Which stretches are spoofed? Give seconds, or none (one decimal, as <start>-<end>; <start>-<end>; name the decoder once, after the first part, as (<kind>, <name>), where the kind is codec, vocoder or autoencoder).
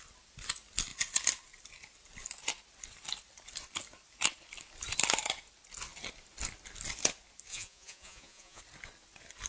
7.5-8.6 (vocoder, Vocos)